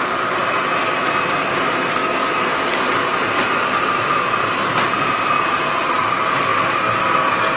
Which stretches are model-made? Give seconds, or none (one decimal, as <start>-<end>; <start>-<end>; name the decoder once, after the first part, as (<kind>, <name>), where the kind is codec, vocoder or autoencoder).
none